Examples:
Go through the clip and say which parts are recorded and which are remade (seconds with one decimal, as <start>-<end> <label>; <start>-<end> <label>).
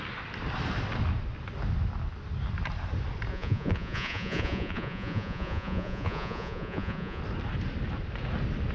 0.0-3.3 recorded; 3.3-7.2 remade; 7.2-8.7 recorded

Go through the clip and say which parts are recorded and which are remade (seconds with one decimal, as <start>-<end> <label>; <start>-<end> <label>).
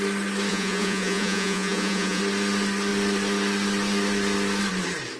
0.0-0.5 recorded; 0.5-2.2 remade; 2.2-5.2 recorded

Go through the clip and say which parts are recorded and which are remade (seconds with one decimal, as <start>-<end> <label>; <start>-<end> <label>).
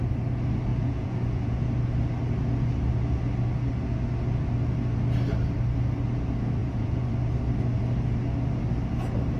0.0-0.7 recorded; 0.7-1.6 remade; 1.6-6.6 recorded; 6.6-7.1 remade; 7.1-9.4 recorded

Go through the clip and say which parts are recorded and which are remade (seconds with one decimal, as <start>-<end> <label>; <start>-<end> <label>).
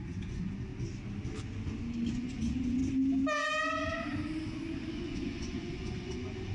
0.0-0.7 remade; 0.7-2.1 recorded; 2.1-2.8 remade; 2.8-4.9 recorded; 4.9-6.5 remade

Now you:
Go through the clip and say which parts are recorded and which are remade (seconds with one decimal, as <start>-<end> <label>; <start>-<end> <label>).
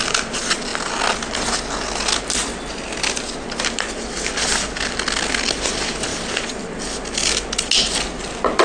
0.0-8.6 recorded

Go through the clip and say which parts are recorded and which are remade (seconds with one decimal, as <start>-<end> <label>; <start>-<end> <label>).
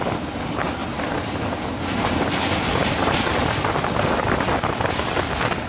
0.0-5.7 recorded